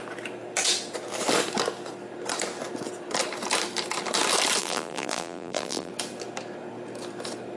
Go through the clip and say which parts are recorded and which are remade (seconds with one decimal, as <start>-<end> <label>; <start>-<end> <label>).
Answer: 0.0-4.6 recorded; 4.6-5.9 remade; 5.9-7.6 recorded